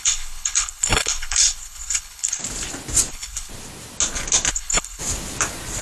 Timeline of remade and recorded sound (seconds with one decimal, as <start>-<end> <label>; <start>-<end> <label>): 0.0-2.4 remade; 2.4-3.1 recorded; 3.1-3.5 remade; 3.5-4.5 recorded; 4.5-5.0 remade; 5.0-5.8 recorded